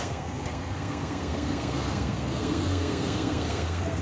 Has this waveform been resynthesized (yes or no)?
yes